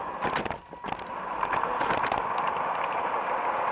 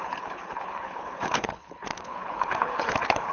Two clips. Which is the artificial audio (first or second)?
second